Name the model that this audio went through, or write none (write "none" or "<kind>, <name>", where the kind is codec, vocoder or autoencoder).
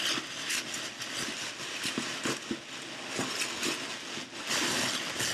none